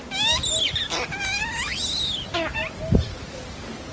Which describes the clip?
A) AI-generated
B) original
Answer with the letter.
B